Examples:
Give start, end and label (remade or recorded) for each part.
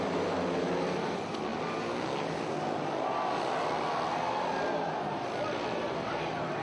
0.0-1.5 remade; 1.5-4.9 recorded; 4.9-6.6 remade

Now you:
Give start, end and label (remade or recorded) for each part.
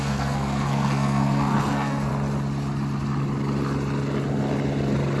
0.0-2.1 remade; 2.1-5.2 recorded